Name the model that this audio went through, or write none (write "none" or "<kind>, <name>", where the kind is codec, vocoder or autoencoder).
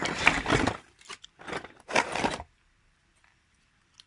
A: vocoder, BigVGAN v2